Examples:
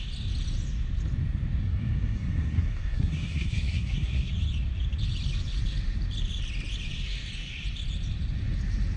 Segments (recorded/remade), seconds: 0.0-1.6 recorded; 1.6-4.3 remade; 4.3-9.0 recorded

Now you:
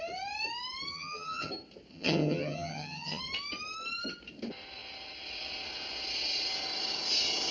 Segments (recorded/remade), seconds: 0.0-0.9 recorded; 0.9-1.5 remade; 1.5-1.9 recorded; 1.9-3.2 remade; 3.2-7.5 recorded

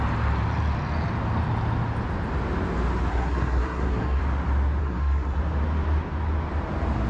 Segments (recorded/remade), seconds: 0.0-3.1 recorded; 3.1-4.2 remade; 4.2-4.8 recorded; 4.8-5.4 remade; 5.4-7.1 recorded